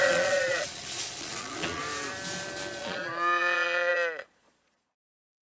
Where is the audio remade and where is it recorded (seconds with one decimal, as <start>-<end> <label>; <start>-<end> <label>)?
0.0-1.8 remade; 1.8-2.8 recorded; 2.8-5.4 remade